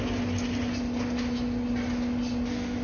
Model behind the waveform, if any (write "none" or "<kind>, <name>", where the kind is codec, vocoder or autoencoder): none